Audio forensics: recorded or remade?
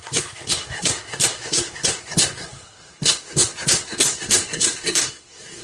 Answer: remade